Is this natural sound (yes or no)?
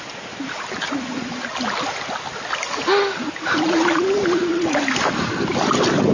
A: yes